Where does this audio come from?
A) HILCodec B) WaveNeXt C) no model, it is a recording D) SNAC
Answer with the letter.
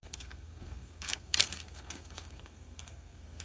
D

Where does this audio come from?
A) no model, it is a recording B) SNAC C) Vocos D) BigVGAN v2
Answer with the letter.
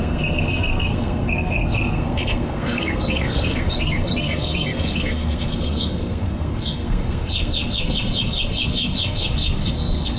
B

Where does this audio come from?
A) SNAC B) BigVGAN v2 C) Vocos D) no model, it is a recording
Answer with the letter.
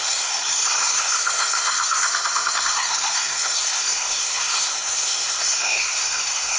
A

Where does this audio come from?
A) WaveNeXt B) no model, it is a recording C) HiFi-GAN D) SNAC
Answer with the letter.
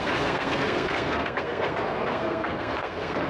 D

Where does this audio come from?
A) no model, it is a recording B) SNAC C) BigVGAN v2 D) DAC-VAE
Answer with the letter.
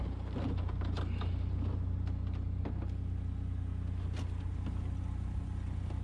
A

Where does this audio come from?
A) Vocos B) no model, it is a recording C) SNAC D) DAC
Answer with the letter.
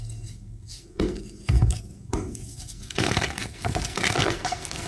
C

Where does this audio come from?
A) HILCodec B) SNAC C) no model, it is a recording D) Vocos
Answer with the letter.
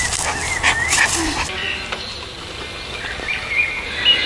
C